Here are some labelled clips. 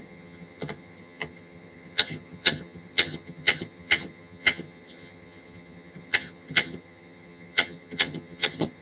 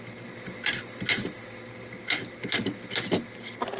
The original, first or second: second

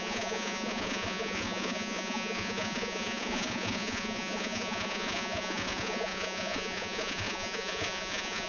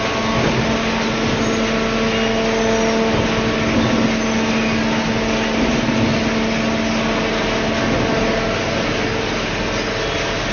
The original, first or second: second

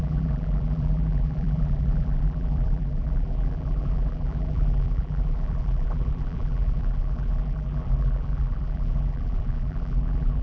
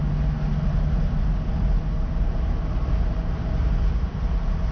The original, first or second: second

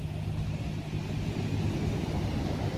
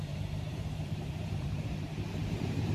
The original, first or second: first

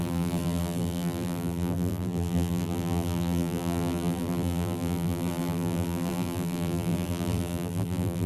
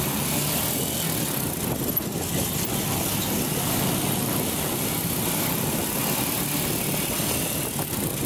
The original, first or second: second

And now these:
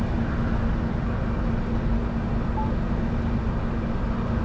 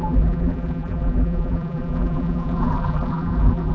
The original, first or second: first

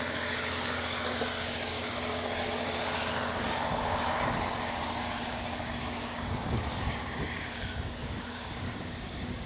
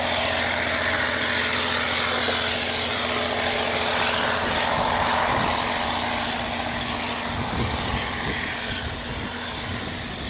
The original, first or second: second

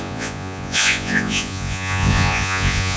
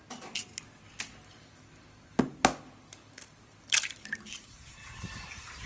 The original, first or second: second